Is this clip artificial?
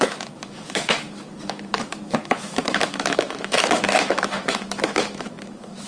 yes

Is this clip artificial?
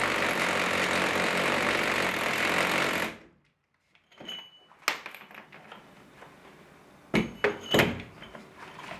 no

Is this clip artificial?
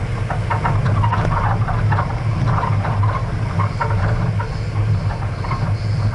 no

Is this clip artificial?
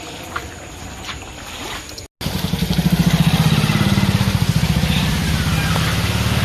no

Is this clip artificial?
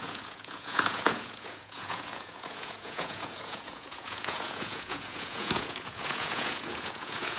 yes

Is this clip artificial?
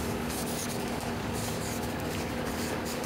yes